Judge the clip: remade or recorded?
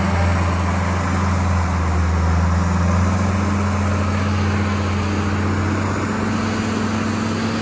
recorded